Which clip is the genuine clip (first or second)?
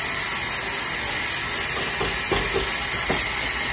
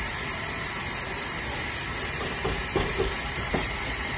first